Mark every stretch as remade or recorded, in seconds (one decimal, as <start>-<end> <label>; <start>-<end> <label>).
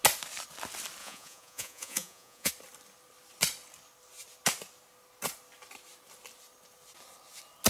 0.0-1.0 recorded; 1.0-2.5 remade; 2.5-7.7 recorded